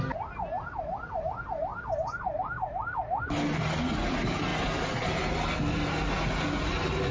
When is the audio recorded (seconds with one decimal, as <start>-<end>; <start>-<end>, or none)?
0.0-7.1